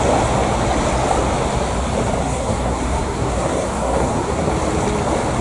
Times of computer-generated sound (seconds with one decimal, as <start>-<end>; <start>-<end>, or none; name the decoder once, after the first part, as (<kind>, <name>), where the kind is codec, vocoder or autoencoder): 2.2-4.5 (codec, SNAC)